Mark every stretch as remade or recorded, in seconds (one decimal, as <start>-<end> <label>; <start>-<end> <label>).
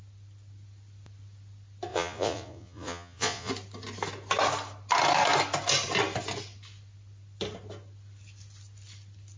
0.0-1.9 recorded; 1.9-3.5 remade; 3.5-9.4 recorded